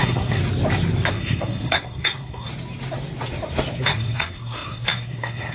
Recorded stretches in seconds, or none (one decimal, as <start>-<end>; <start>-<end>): 0.4-1.1; 2.5-3.8